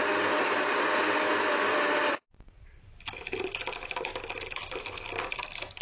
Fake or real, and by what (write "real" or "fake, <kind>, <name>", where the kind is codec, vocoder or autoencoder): real